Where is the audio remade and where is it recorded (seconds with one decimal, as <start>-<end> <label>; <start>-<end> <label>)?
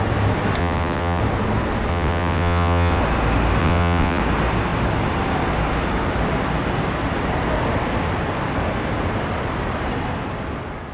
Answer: 0.0-0.6 recorded; 0.6-1.2 remade; 1.2-1.9 recorded; 1.9-3.0 remade; 3.0-3.6 recorded; 3.6-4.2 remade; 4.2-10.9 recorded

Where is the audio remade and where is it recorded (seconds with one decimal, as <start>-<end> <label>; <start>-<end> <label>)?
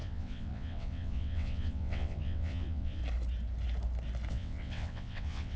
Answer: 0.0-3.0 remade; 3.0-4.3 recorded; 4.3-5.6 remade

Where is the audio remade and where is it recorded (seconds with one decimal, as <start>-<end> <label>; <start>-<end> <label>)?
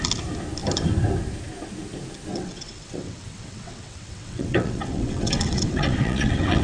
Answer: 0.0-2.3 recorded; 2.3-6.6 remade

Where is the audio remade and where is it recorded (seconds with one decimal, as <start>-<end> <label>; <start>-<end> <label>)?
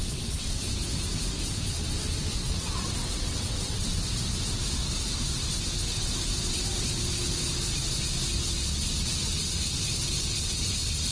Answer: 0.0-0.6 remade; 0.6-2.3 recorded; 2.3-4.0 remade; 4.0-11.1 recorded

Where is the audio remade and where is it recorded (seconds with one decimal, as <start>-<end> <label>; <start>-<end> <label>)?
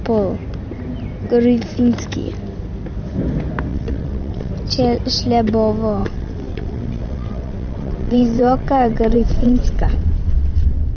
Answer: 0.0-3.7 recorded; 3.7-4.5 remade; 4.5-6.0 recorded; 6.0-11.0 remade